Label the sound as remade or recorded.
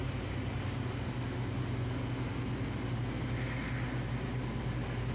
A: recorded